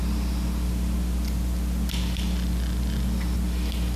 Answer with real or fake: real